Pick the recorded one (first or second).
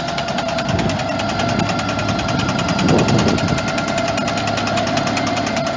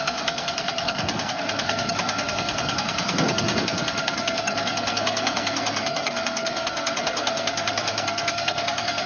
first